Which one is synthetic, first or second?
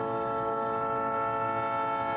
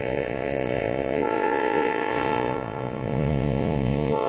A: second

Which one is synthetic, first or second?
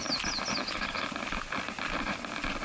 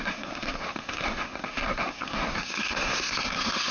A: second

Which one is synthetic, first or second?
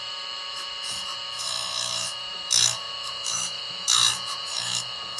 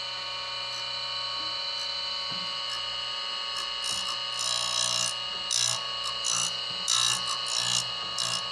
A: first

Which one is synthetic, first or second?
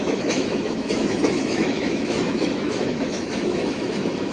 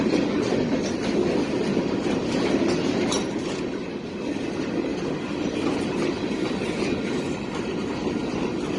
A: first